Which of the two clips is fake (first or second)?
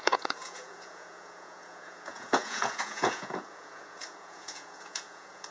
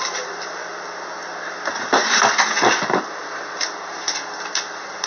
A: first